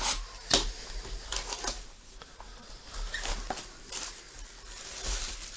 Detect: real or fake real